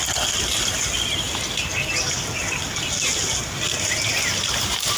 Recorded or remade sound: recorded